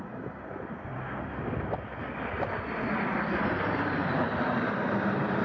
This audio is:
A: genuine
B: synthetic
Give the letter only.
B